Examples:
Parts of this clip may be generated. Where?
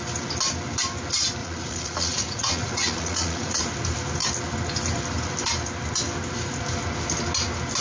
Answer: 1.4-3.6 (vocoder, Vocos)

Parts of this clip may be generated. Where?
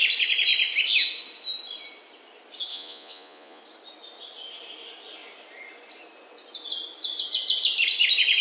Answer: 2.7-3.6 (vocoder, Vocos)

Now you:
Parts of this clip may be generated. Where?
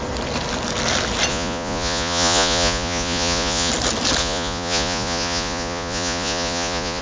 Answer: 1.3-3.7 (vocoder, Vocos); 4.2-7.0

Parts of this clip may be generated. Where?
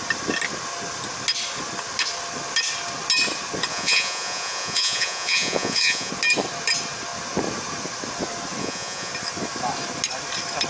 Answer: 3.7-6.1 (vocoder, Vocos); 8.6-9.1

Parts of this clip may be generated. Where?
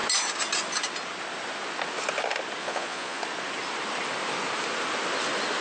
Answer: 2.6-3.2 (vocoder, Vocos)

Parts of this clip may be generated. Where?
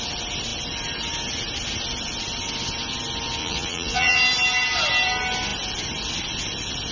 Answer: 3.4-4.2 (vocoder, Vocos)